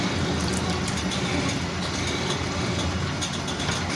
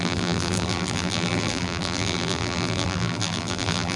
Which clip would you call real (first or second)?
first